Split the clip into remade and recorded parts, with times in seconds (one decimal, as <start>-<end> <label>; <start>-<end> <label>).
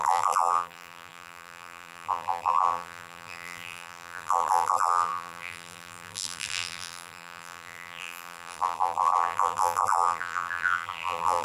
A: 0.0-11.4 remade